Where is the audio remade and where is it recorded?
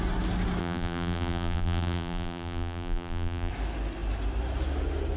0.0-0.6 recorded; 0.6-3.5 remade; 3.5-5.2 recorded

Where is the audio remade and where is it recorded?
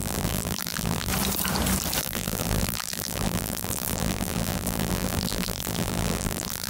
0.0-1.1 remade; 1.1-2.0 recorded; 2.0-6.7 remade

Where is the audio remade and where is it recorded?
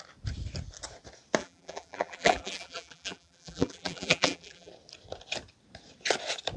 0.0-1.4 recorded; 1.4-4.7 remade; 4.7-6.6 recorded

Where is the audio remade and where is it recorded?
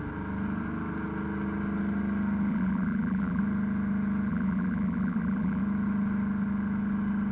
0.0-2.5 recorded; 2.5-3.4 remade; 3.4-4.3 recorded; 4.3-5.6 remade; 5.6-7.3 recorded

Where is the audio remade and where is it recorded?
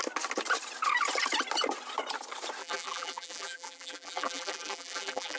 0.0-2.6 recorded; 2.6-5.4 remade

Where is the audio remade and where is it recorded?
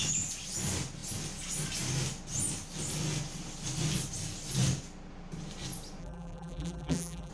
0.0-6.0 recorded; 6.0-7.3 remade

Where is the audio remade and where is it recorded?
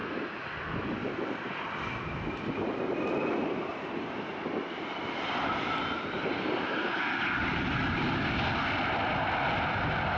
0.0-2.4 remade; 2.4-7.4 recorded; 7.4-8.0 remade; 8.0-10.2 recorded